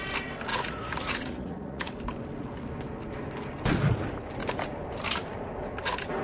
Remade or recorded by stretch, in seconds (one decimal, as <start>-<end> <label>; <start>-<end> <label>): 0.0-0.5 recorded; 0.5-1.9 remade; 1.9-6.2 recorded